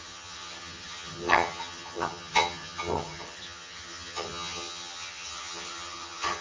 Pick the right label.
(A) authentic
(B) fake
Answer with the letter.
B